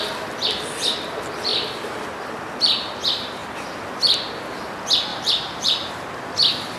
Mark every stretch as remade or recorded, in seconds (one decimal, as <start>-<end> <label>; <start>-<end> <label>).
0.0-5.1 recorded; 5.1-5.9 remade; 5.9-6.8 recorded